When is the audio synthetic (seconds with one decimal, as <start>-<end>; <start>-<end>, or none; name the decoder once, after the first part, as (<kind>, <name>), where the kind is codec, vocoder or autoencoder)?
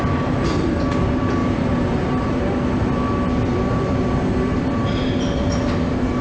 1.4-2.4 (vocoder, BigVGAN v2); 4.5-5.7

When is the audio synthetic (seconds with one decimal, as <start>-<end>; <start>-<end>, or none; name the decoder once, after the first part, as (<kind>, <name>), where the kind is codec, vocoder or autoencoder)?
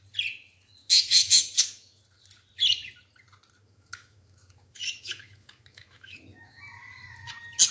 0.8-2.0 (autoencoder, DAC-VAE); 3.6-6.6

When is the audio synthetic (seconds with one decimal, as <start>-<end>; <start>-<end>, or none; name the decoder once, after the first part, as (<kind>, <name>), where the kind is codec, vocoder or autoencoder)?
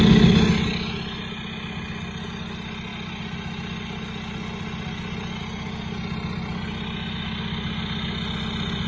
none